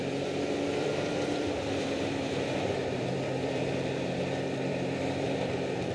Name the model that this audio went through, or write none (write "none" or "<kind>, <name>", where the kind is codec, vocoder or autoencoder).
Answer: vocoder, BigVGAN v2